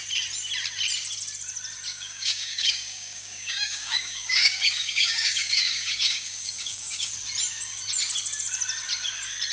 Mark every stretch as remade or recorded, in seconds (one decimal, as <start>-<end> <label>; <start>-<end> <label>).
0.0-1.9 recorded; 1.9-7.1 remade; 7.1-9.5 recorded